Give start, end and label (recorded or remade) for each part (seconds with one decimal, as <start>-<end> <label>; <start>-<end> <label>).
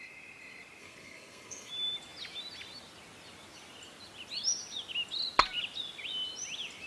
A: 0.0-0.8 recorded; 0.8-1.7 remade; 1.7-6.9 recorded